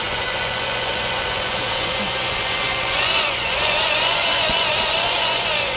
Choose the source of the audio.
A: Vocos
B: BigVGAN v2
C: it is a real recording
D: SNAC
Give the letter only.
A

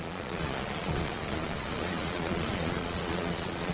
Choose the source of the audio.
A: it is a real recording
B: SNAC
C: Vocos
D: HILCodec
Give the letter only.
C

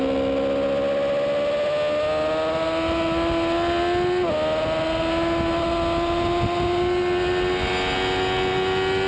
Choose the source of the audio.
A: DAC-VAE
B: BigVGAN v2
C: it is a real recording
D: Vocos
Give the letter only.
C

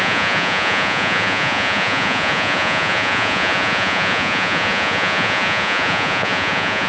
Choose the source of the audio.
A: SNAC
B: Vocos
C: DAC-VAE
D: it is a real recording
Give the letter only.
B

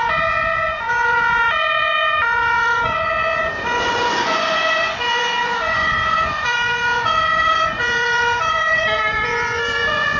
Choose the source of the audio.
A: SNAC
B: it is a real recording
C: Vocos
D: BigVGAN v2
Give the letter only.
C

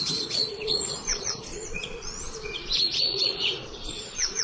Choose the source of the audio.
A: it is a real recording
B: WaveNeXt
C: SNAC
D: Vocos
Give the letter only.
D